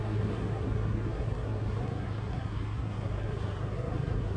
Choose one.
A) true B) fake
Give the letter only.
B